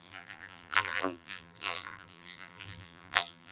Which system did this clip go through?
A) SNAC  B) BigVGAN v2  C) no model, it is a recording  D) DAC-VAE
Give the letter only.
B